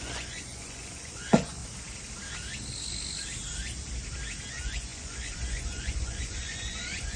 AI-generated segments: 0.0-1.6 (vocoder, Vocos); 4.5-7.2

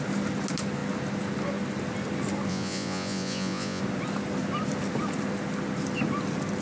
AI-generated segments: 2.5-3.8 (vocoder, Vocos)